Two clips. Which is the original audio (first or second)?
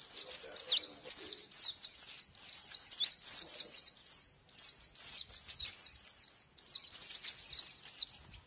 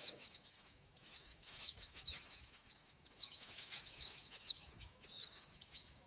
first